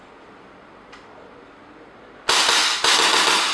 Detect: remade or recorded recorded